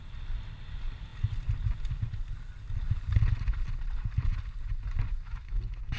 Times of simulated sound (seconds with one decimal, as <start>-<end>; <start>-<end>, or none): 5.1-5.6